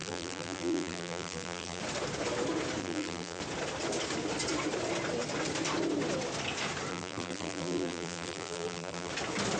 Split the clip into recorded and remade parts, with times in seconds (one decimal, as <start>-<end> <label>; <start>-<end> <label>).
0.0-1.8 remade; 1.8-2.8 recorded; 2.8-3.4 remade; 3.4-6.9 recorded; 6.9-9.1 remade; 9.1-9.6 recorded